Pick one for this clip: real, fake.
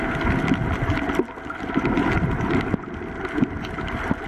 real